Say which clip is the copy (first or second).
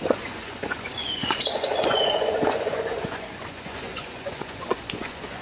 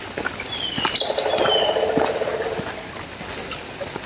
first